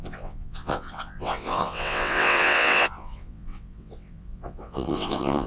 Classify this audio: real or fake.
fake